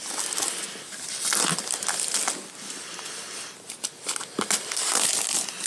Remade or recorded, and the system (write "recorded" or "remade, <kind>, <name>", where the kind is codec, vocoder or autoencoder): recorded